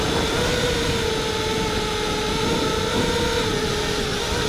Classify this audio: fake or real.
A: real